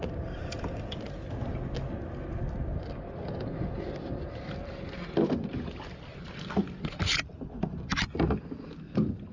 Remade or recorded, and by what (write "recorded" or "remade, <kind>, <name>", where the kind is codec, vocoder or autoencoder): recorded